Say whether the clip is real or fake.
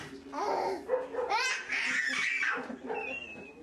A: real